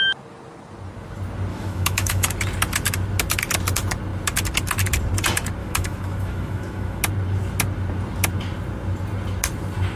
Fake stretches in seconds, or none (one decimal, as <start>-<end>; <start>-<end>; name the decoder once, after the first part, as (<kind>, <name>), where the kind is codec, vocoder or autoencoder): 1.5-2.3 (autoencoder, DAC-VAE); 5.6-7.0